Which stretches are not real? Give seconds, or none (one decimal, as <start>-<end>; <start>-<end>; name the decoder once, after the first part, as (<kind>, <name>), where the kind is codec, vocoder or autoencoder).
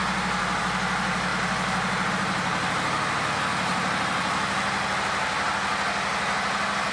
none